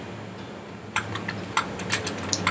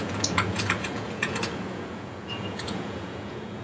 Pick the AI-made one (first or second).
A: second